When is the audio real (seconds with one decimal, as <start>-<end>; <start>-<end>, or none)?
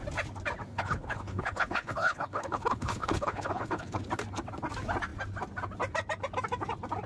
0.0-0.7; 4.0-7.1